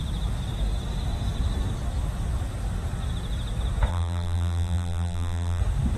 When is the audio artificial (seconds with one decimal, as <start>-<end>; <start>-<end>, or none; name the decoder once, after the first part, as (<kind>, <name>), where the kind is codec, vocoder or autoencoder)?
3.9-5.6 (vocoder, BigVGAN v2)